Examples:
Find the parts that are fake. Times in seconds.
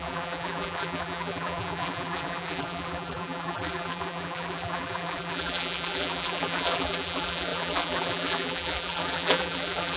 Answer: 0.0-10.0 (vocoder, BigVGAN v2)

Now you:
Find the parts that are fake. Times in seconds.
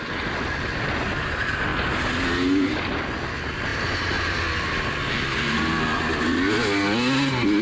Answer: 3.7-4.4 (vocoder, BigVGAN v2)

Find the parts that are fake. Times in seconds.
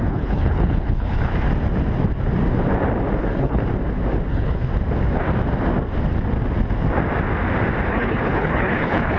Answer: 0.0-1.3 (codec, HILCodec); 3.2-3.6; 4.3-4.7; 7.9-9.2